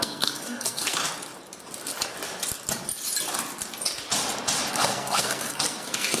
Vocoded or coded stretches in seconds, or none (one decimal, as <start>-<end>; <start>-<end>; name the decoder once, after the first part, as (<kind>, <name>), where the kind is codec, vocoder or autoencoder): 0.0-1.0 (codec, SNAC); 4.7-6.2